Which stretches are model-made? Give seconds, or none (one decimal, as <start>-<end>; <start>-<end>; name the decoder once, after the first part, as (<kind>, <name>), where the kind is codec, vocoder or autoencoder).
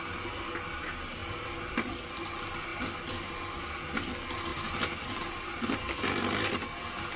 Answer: none